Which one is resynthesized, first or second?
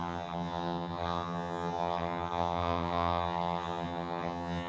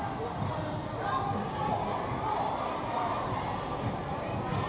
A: first